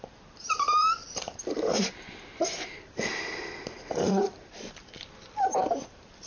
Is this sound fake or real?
fake